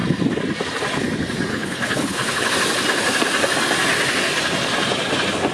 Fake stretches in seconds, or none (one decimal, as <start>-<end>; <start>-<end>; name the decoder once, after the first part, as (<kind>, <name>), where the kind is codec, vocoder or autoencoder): 1.5-2.5 (codec, HILCodec)